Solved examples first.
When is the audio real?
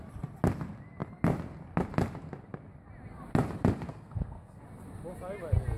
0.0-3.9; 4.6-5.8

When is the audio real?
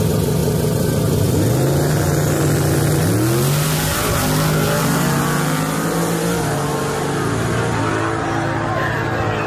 0.0-9.5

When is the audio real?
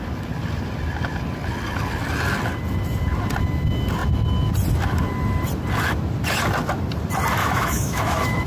0.0-7.4